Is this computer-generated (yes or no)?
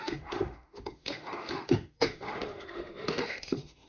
yes